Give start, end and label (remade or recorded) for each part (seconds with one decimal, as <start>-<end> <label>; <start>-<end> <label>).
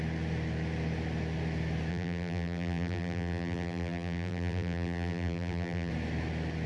0.0-1.9 recorded; 1.9-5.9 remade; 5.9-6.7 recorded